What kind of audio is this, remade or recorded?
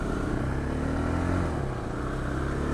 recorded